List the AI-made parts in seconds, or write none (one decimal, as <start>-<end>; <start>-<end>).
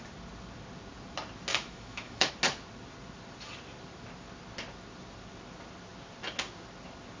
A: 1.5-2.3